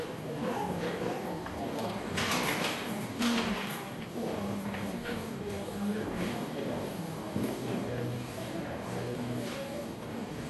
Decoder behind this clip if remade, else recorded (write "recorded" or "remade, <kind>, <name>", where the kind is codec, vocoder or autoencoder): remade, codec, DAC